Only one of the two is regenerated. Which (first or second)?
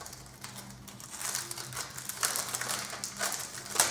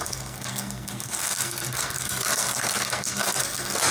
second